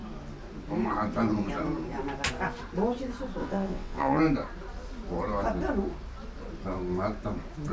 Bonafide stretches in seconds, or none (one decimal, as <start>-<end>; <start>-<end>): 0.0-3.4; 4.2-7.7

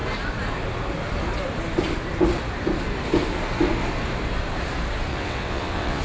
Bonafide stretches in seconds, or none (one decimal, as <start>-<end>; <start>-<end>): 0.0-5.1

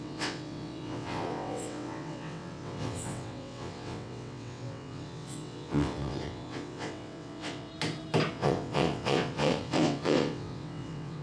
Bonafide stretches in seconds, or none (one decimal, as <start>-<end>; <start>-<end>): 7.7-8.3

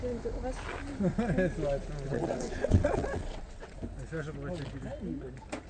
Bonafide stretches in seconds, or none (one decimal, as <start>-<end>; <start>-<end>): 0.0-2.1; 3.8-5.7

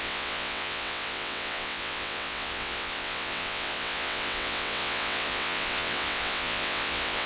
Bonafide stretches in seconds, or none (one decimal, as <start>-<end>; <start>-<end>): none

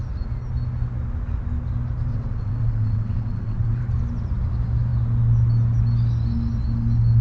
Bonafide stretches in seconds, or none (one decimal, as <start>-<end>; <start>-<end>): 0.0-2.1; 3.8-7.2

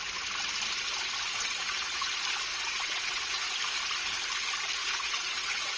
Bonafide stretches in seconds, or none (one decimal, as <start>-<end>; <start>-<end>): 0.0-1.3; 2.1-2.5; 3.4-4.8

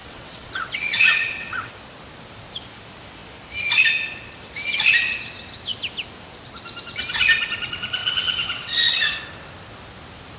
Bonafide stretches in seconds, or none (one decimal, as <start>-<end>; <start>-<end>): 1.7-8.0; 9.2-10.4